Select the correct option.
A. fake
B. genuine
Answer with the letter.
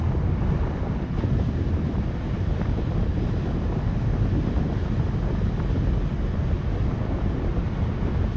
B